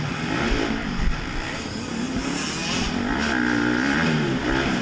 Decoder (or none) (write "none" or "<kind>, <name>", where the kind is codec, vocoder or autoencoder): none